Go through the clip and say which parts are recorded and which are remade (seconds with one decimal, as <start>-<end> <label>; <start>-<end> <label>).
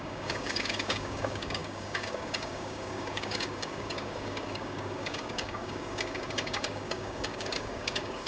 0.0-8.3 remade